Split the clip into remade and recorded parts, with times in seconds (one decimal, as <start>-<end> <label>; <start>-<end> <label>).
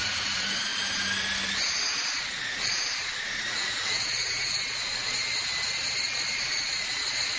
0.0-0.7 remade; 0.7-2.1 recorded; 2.1-5.2 remade; 5.2-6.3 recorded; 6.3-7.4 remade